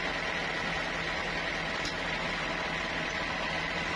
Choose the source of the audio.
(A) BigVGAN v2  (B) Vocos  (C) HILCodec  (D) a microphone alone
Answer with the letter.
D